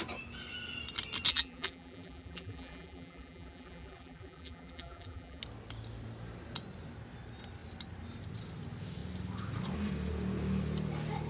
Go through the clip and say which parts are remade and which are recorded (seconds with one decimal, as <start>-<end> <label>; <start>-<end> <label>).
0.0-1.3 recorded; 1.3-5.4 remade; 5.4-11.3 recorded